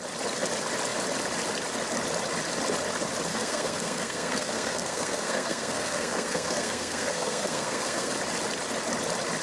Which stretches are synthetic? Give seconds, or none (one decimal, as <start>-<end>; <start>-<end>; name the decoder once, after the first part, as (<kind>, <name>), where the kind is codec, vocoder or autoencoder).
3.3-8.1 (codec, SNAC)